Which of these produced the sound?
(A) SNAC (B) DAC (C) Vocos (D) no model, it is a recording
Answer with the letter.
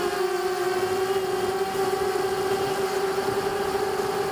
D